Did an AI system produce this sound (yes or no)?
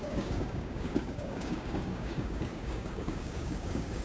yes